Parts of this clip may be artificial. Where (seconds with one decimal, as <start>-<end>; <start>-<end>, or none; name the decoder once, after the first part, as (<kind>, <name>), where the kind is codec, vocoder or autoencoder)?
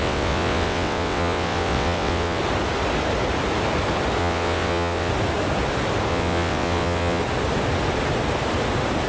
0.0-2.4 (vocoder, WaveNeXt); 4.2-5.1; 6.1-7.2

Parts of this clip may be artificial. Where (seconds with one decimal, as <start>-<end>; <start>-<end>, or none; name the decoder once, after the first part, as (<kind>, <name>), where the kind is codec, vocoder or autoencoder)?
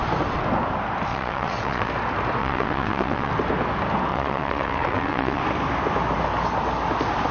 1.1-1.9 (vocoder, WaveNeXt); 2.4-3.3; 4.1-5.4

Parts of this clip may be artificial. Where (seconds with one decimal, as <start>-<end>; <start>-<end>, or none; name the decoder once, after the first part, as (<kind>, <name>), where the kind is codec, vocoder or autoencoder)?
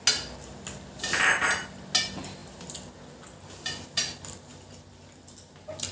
2.4-3.9 (vocoder, BigVGAN v2); 4.5-5.0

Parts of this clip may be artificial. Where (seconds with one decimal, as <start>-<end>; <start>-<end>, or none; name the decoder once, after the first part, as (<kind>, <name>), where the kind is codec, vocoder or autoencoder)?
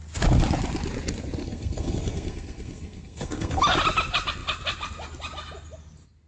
1.4-3.6 (codec, SNAC)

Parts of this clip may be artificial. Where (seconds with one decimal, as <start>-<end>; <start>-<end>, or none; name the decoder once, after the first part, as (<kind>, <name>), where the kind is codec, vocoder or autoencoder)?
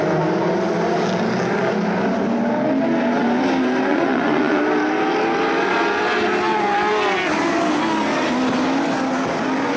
3.9-4.6 (vocoder, Vocos)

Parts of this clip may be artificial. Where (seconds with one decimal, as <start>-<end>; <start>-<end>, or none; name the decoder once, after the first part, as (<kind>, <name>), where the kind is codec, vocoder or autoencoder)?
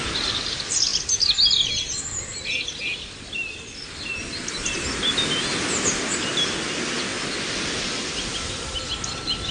none